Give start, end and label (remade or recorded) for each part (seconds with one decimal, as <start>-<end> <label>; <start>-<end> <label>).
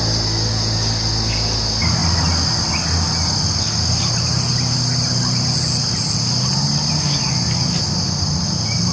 0.0-8.9 recorded